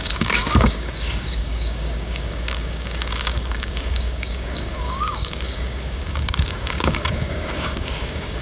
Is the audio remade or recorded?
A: remade